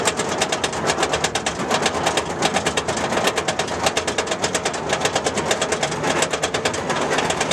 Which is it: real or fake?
real